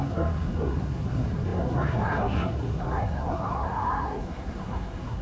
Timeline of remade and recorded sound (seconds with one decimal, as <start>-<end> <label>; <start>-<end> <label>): 0.0-5.2 remade